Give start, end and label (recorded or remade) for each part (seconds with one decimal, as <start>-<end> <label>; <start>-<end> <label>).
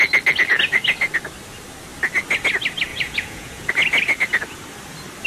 0.0-2.9 recorded; 2.9-3.7 remade; 3.7-5.3 recorded